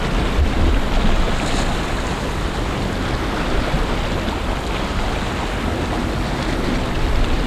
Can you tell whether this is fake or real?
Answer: real